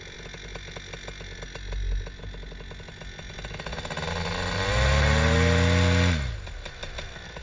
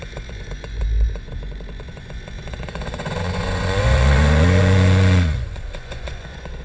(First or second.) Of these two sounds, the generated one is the second